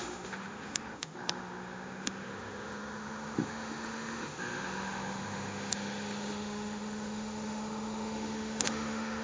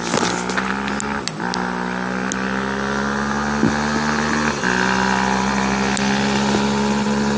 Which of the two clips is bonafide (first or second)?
second